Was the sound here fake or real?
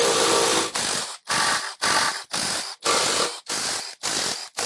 real